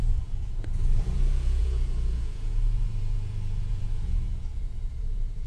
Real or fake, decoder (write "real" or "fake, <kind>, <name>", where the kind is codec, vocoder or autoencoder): fake, vocoder, Vocos